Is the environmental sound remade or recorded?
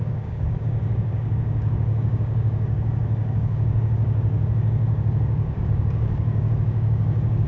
remade